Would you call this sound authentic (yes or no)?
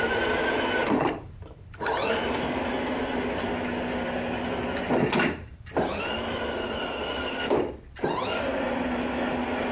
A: yes